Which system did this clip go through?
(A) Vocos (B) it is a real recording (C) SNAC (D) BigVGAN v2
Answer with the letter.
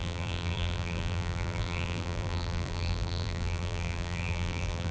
D